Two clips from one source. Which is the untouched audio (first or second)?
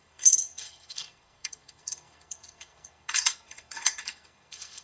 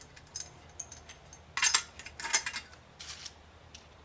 second